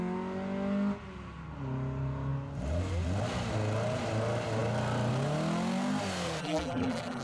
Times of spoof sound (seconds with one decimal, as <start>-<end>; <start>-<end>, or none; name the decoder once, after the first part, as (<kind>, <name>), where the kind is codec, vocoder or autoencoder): 6.4-7.2 (vocoder, BigVGAN v2)